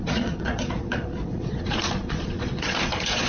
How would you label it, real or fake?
fake